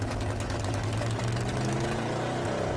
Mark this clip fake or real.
real